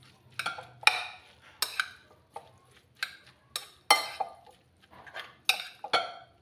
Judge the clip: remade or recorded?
recorded